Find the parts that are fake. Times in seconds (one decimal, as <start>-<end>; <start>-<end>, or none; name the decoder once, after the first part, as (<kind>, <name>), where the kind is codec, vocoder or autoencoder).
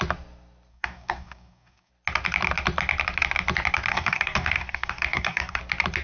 0.7-1.9 (codec, DAC); 3.9-5.6